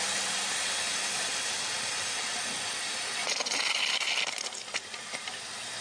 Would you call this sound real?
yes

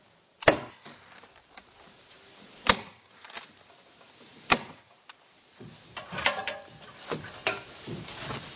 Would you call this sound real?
no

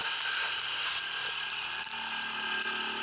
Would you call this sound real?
yes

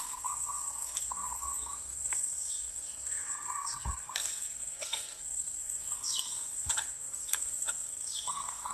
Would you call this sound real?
no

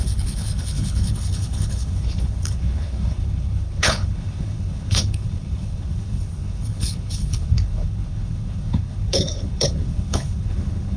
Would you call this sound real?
no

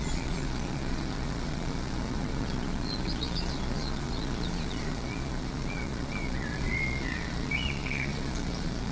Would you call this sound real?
no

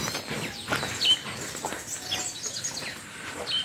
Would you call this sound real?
yes